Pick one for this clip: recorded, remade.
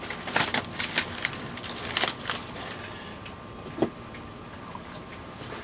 remade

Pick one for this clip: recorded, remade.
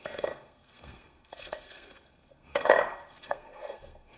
remade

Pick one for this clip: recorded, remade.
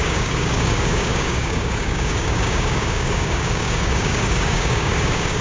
remade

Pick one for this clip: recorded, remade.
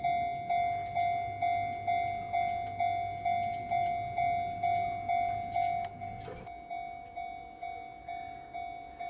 recorded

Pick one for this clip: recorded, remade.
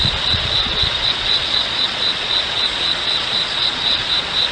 remade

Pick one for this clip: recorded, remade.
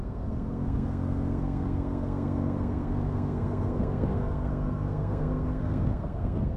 remade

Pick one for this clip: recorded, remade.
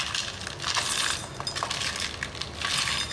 recorded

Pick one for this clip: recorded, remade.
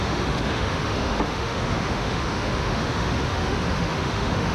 remade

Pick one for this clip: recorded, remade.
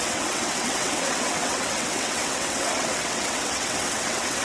remade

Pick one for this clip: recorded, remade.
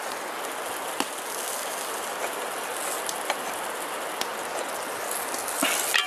recorded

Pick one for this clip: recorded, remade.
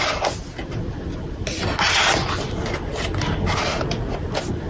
recorded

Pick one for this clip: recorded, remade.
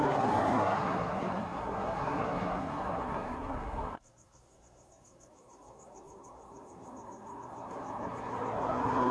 remade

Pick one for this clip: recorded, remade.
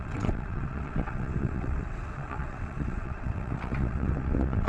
remade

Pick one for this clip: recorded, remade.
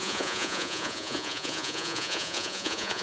remade